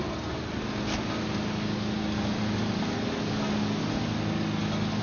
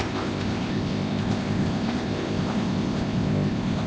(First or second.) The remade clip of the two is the second